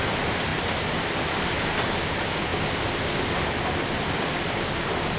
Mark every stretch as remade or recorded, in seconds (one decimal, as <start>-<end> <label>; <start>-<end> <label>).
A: 0.0-5.2 recorded